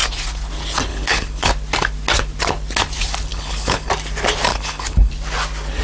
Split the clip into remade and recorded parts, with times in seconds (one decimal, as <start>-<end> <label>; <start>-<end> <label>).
0.0-0.9 recorded; 0.9-1.5 remade; 1.5-3.3 recorded; 3.3-3.9 remade; 3.9-4.5 recorded; 4.5-5.1 remade; 5.1-5.8 recorded